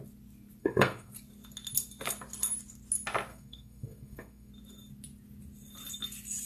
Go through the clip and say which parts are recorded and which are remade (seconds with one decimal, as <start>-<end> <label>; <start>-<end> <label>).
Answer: 0.0-0.6 recorded; 0.6-1.1 remade; 1.1-3.3 recorded; 3.3-4.5 remade; 4.5-6.5 recorded